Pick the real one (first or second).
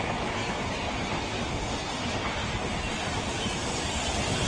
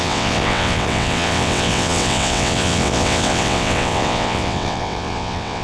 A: first